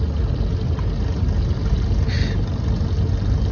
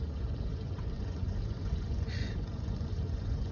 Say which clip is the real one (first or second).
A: first